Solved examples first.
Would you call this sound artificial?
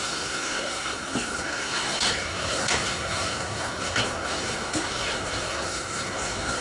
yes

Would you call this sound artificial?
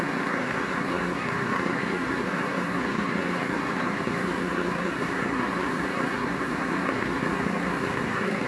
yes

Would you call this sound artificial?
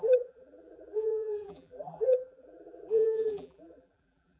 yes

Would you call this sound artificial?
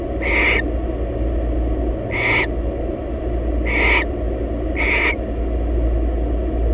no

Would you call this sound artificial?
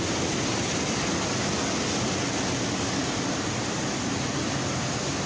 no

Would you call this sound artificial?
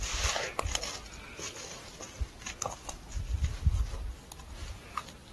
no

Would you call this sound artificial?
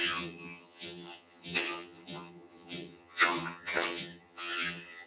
yes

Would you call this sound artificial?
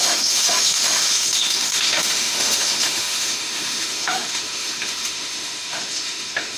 yes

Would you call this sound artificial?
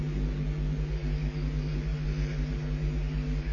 no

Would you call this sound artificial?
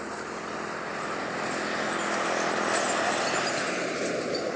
no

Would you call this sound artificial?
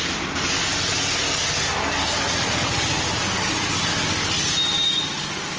no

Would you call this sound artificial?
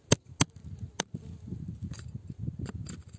no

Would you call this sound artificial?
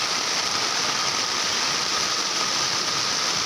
yes